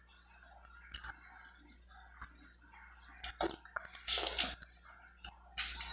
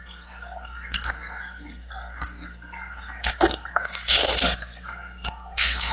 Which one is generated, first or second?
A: second